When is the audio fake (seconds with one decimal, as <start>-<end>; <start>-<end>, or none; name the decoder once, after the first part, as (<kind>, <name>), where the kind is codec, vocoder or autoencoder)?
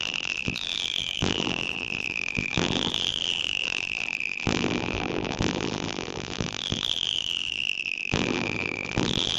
0.0-9.4 (vocoder, BigVGAN v2)